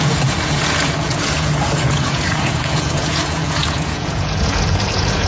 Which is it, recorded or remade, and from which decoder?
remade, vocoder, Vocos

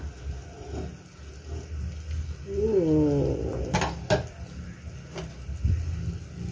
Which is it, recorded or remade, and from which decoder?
recorded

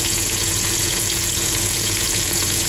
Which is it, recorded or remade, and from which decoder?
remade, vocoder, Vocos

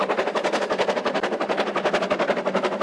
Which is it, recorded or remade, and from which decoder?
recorded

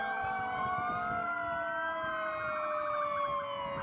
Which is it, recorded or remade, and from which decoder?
recorded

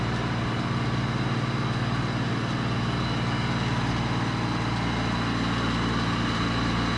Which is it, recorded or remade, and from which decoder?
recorded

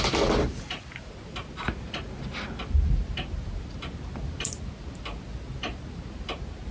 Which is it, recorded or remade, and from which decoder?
recorded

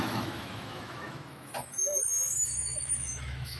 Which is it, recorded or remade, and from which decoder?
remade, autoencoder, DAC-VAE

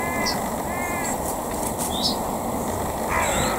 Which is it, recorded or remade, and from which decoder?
remade, vocoder, BigVGAN v2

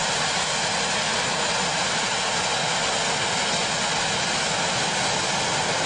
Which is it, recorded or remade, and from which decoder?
recorded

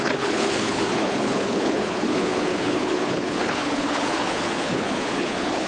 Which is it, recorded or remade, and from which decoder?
remade, codec, HILCodec